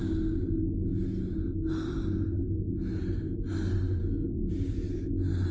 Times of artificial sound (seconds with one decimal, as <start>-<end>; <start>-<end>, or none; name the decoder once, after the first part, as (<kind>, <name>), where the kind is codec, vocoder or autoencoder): 4.0-4.5 (codec, DAC)